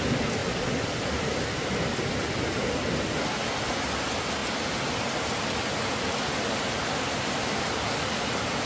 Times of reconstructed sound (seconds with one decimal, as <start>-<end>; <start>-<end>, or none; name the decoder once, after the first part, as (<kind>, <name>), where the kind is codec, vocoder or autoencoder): none